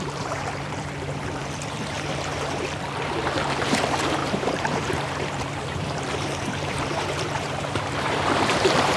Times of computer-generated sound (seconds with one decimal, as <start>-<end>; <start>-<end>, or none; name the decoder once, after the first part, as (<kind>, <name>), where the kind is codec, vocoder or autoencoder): 0.0-2.3 (vocoder, BigVGAN v2); 3.1-9.0